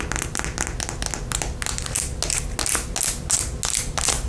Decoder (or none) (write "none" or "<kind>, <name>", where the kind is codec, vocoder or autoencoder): none